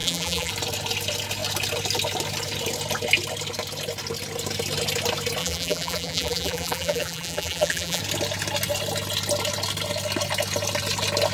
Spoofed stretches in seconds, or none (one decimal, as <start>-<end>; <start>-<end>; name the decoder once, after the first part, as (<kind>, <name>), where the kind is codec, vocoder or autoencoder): 0.0-0.5 (vocoder, BigVGAN v2); 5.4-8.0